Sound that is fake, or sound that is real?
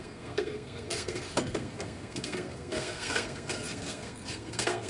fake